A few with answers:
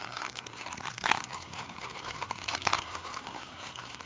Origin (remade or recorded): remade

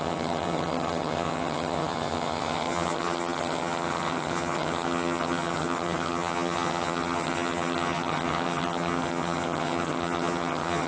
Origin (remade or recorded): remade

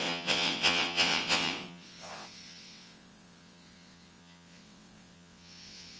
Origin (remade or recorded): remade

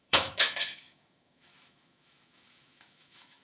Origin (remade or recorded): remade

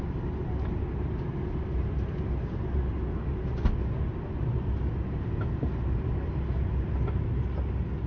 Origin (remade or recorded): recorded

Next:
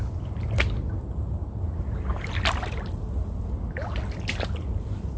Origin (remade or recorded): recorded